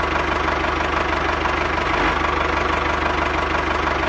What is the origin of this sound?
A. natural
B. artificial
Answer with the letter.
A